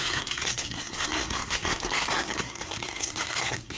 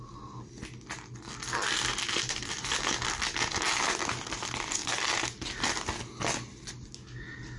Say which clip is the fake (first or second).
first